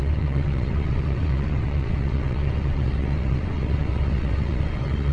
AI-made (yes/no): yes